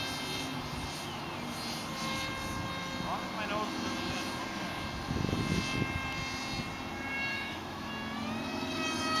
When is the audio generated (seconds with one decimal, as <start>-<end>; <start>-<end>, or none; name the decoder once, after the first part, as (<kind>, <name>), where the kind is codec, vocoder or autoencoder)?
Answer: 7.3-7.9 (autoencoder, DAC-VAE)